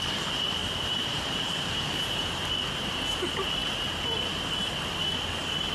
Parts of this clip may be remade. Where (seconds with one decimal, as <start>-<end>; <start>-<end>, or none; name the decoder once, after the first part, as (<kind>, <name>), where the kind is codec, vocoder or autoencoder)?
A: 0.6-2.3 (vocoder, BigVGAN v2)